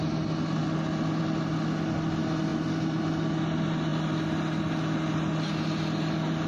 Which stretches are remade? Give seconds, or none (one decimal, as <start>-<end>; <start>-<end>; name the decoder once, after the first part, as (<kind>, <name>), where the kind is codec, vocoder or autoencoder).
none